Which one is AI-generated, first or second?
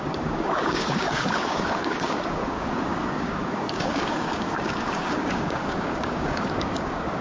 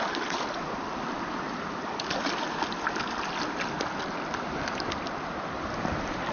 first